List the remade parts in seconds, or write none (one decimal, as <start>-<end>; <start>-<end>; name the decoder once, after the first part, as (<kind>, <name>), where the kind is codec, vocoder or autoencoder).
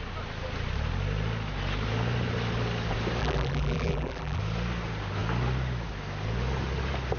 3.2-4.4 (vocoder, BigVGAN v2)